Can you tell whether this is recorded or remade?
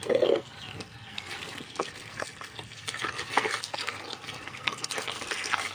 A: remade